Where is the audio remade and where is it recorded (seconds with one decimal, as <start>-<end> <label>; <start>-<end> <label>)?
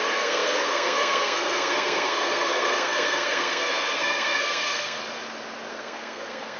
0.0-5.0 remade; 5.0-5.7 recorded; 5.7-6.6 remade